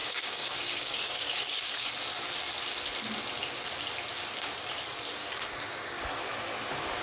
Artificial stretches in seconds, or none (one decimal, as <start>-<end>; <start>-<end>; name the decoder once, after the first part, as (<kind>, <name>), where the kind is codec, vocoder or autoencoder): 0.0-1.9 (codec, DAC); 5.2-6.0